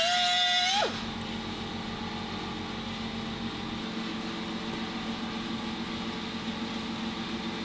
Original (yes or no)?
yes